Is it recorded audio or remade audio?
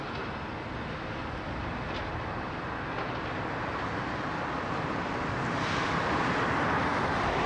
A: recorded